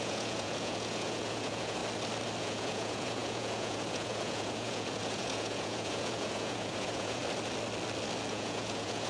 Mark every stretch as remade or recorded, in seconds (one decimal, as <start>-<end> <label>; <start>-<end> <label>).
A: 0.0-1.8 remade; 1.8-2.4 recorded; 2.4-7.2 remade; 7.2-8.3 recorded; 8.3-9.1 remade